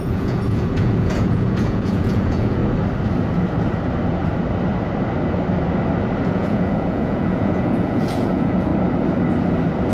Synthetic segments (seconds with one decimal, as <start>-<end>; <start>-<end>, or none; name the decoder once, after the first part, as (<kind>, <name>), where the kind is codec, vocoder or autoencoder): 0.0-2.6 (vocoder, Vocos); 6.2-8.7